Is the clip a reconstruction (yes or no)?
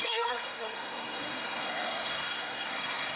yes